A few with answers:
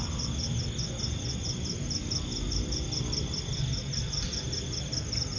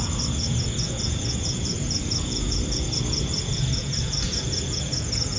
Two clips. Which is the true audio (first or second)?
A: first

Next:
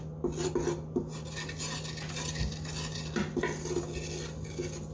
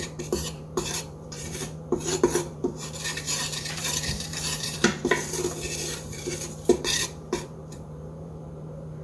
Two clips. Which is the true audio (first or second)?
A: first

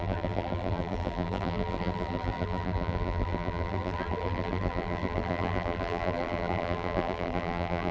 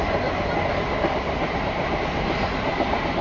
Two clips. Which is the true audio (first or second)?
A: second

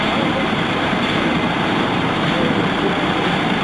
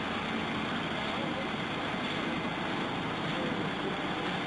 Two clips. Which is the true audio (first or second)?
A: second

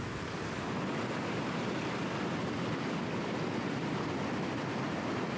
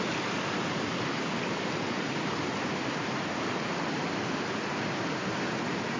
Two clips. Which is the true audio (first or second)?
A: first